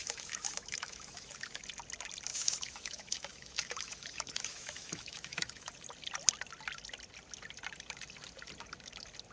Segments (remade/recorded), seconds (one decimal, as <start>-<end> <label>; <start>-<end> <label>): 0.0-1.6 remade; 1.6-2.3 recorded; 2.3-5.7 remade; 5.7-9.3 recorded